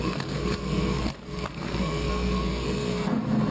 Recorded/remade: remade